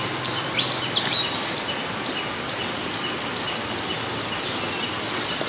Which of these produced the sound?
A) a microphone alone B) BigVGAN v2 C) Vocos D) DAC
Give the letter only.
A